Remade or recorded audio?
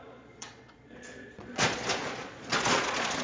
remade